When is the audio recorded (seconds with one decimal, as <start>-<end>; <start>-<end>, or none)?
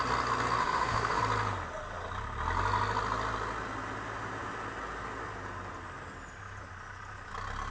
0.0-0.6; 1.2-7.7